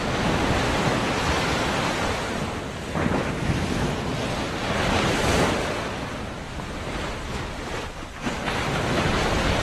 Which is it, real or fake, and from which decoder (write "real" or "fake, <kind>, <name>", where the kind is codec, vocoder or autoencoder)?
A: fake, vocoder, BigVGAN v2